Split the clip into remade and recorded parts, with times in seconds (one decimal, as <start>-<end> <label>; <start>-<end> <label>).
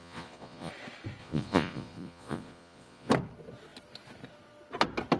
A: 0.0-0.7 remade; 0.7-1.2 recorded; 1.2-3.1 remade; 3.1-5.2 recorded